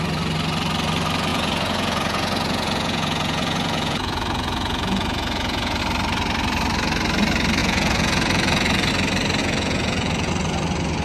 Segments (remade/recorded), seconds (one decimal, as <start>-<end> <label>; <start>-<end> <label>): 0.0-1.3 recorded; 1.3-5.8 remade; 5.8-7.6 recorded; 7.6-8.9 remade; 8.9-9.4 recorded; 9.4-10.3 remade; 10.3-11.0 recorded